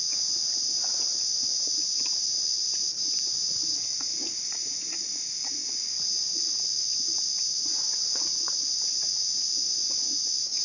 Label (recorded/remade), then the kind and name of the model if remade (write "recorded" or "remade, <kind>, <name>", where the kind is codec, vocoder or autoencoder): remade, vocoder, Vocos